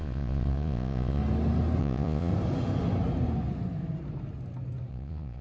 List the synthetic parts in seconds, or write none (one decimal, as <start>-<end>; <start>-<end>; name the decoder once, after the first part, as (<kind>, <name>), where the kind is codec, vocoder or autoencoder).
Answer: 0.0-1.2 (vocoder, Vocos); 1.8-2.3; 4.9-5.4